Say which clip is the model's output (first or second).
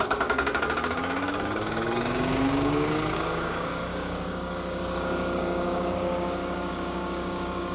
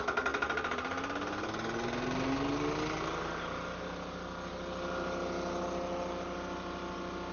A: first